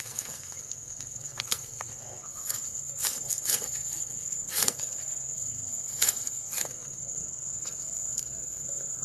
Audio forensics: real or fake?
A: fake